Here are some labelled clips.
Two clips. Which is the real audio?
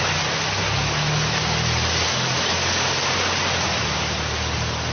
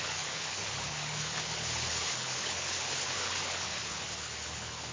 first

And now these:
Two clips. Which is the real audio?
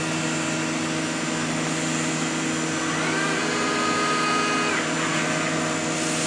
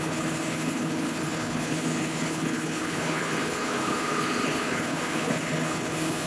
first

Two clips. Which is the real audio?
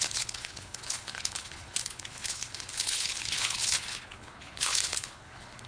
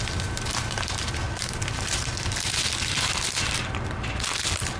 second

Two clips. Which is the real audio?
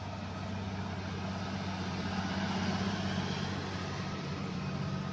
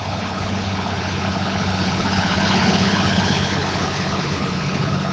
first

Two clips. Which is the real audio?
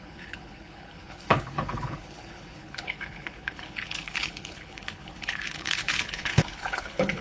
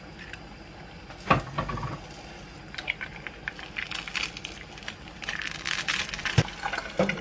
second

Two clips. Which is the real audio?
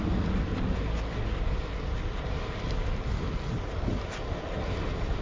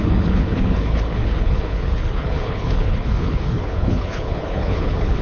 first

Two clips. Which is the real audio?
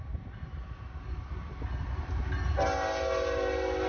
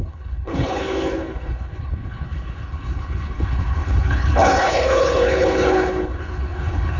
first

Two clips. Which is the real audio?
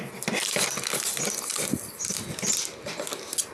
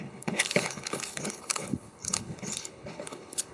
first